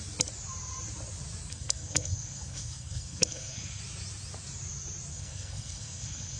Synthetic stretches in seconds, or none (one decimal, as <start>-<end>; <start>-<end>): 1.5-3.8; 5.1-6.4